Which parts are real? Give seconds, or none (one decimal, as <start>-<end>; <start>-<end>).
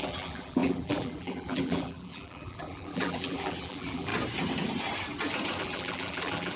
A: 4.1-5.6